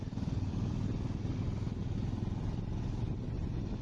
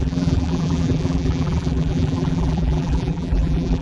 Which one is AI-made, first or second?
second